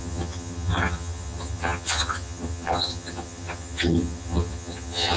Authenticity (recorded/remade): remade